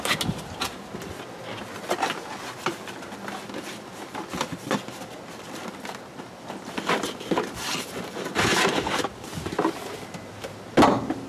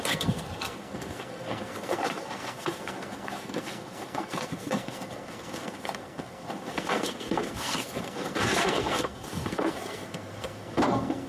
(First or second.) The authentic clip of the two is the first